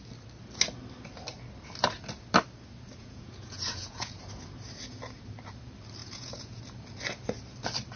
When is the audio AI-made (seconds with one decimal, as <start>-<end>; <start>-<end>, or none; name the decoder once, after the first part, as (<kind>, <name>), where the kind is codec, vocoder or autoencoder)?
3.0-4.2 (vocoder, Vocos); 6.0-6.6